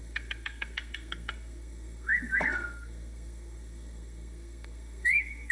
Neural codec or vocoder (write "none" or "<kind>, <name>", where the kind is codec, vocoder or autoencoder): codec, SNAC